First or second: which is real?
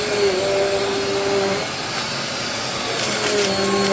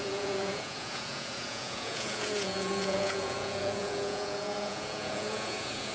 first